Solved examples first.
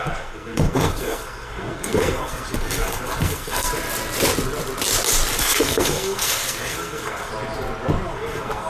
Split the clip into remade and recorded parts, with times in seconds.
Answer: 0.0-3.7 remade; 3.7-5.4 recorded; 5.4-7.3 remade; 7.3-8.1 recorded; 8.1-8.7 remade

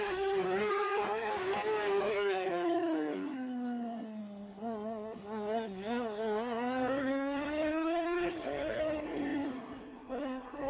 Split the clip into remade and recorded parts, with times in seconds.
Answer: 0.0-1.3 remade; 1.3-2.0 recorded; 2.0-10.7 remade

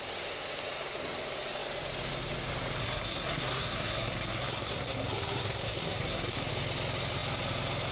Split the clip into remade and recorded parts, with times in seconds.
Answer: 0.0-2.8 recorded; 2.8-6.5 remade; 6.5-7.9 recorded

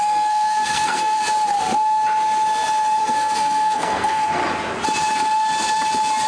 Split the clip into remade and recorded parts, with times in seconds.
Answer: 0.0-1.2 remade; 1.2-3.0 recorded; 3.0-4.4 remade; 4.4-6.3 recorded

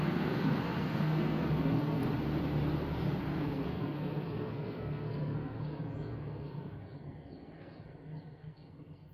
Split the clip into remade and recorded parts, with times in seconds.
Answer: 0.0-2.0 remade; 2.0-3.2 recorded; 3.2-9.1 remade

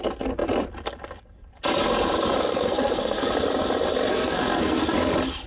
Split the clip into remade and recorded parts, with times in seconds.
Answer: 0.0-2.5 recorded; 2.5-3.3 remade; 3.3-4.1 recorded; 4.1-4.8 remade; 4.8-5.5 recorded